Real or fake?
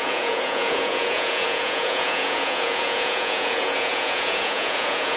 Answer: fake